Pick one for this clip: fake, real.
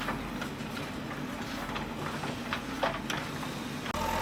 real